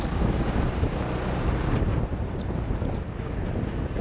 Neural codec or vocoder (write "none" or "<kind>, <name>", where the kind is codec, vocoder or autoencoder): none